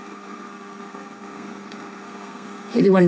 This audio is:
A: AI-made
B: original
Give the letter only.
A